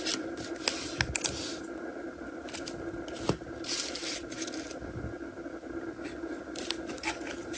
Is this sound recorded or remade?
recorded